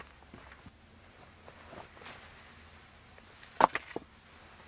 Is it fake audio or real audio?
real